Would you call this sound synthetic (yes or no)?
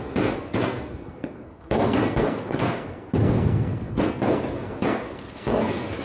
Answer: yes